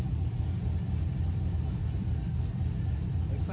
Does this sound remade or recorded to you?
remade